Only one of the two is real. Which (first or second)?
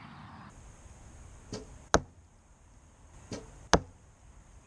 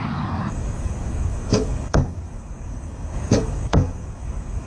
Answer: first